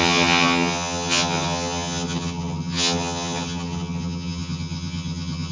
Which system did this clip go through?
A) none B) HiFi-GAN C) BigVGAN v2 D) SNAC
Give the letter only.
B